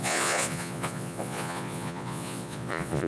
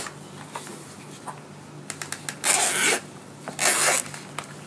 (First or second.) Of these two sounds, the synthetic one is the first